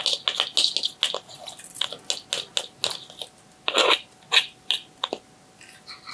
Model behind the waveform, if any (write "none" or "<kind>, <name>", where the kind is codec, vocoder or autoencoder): none